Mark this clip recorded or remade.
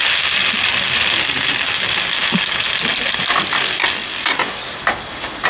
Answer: recorded